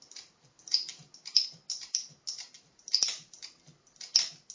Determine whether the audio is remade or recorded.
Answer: recorded